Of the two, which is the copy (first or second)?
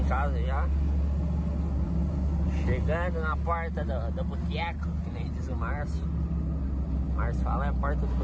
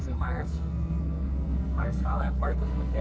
second